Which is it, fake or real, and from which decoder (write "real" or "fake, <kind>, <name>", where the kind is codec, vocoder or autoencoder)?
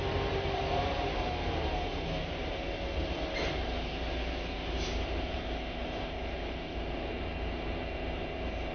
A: fake, vocoder, BigVGAN v2